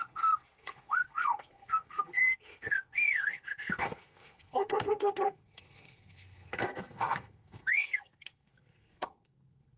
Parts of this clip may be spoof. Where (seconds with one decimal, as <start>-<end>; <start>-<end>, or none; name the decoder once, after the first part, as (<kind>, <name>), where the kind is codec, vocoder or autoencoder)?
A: 0.0-9.8 (codec, SNAC)

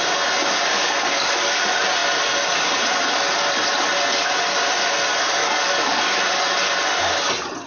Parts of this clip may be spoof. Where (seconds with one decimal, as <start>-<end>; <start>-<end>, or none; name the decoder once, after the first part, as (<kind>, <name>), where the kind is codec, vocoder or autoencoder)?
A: 0.7-1.6 (codec, DAC); 5.4-6.2

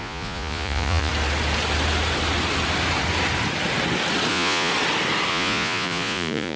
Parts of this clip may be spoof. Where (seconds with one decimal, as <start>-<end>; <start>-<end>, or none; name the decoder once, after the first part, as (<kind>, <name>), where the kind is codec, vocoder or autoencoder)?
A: 0.0-1.1 (vocoder, Vocos); 4.3-4.7; 5.3-6.6

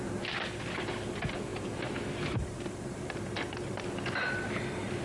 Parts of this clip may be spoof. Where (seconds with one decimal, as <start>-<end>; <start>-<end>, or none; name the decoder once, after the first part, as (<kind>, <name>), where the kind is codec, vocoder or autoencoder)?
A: 1.5-3.9 (vocoder, BigVGAN v2)